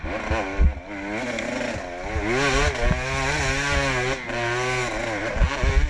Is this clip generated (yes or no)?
no